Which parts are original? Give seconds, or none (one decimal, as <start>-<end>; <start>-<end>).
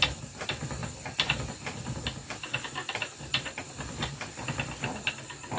0.0-5.6